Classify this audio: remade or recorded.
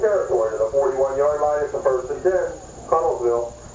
recorded